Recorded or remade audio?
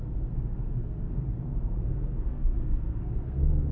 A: remade